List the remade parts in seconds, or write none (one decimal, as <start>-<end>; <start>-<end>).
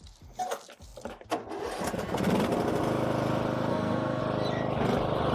3.7-4.2